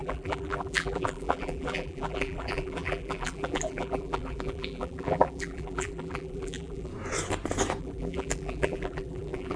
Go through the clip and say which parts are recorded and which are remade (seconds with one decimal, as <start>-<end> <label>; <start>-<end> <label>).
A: 0.0-6.9 remade; 6.9-7.8 recorded; 7.8-9.6 remade